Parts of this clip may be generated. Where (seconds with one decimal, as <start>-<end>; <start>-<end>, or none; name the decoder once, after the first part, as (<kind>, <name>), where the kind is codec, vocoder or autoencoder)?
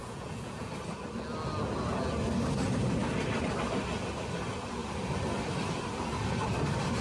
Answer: 0.0-0.7 (vocoder, Vocos)